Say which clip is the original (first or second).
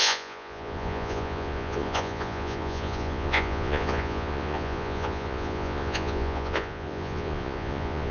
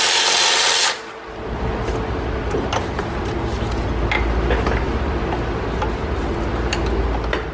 second